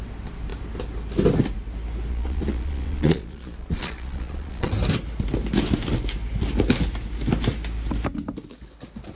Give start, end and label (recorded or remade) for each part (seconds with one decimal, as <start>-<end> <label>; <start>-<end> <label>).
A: 0.0-2.1 recorded; 2.1-4.7 remade; 4.7-9.2 recorded